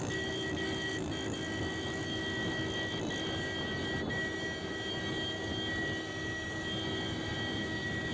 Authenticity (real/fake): real